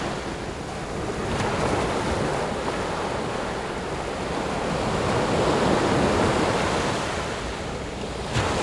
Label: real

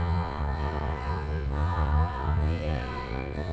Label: fake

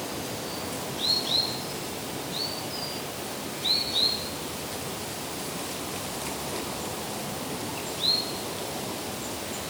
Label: real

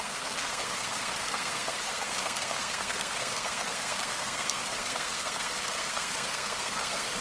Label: fake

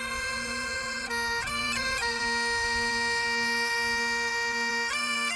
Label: fake